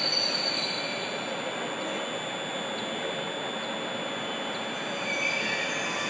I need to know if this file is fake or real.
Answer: real